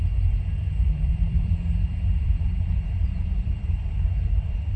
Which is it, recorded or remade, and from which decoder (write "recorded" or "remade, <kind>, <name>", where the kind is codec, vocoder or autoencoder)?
remade, vocoder, BigVGAN v2